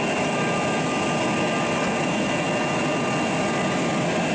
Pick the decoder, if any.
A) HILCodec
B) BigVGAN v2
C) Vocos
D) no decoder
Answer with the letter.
D